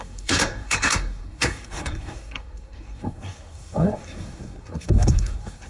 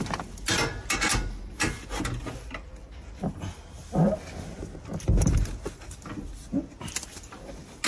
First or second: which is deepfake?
first